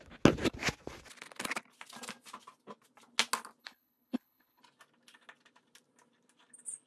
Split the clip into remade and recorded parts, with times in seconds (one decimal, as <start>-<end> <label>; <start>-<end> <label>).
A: 0.0-3.6 recorded; 3.6-4.6 remade; 4.6-6.9 recorded